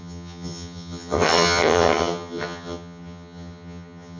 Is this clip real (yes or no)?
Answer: no